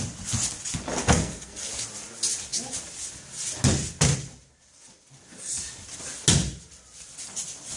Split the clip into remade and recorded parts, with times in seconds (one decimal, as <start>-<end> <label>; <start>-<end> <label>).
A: 0.0-1.0 recorded; 1.0-1.7 remade; 1.7-7.8 recorded